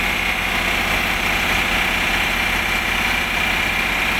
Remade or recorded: recorded